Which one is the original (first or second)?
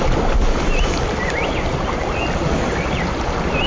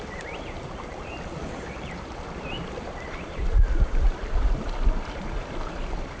first